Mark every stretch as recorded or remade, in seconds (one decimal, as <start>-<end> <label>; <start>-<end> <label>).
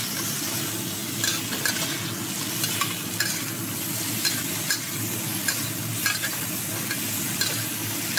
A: 0.0-8.2 recorded